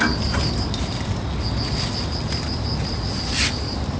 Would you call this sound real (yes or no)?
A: yes